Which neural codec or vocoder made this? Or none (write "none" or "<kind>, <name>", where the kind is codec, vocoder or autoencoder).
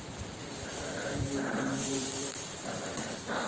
vocoder, BigVGAN v2